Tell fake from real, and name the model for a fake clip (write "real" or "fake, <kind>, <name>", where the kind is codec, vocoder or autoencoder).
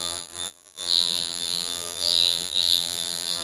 fake, vocoder, BigVGAN v2